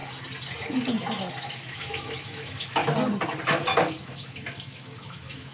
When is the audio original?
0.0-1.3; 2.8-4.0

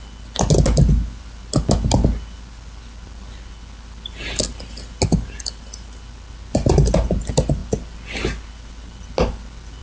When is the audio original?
0.0-9.8

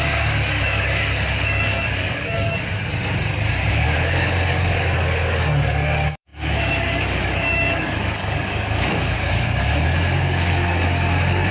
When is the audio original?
2.8-3.7

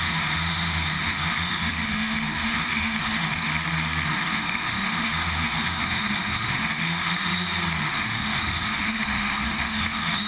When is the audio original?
3.5-4.1; 7.3-7.8